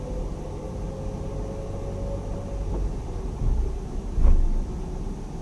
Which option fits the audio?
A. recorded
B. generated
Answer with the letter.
A